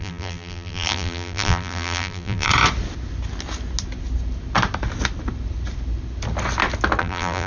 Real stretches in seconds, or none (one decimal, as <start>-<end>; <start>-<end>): 2.5-7.0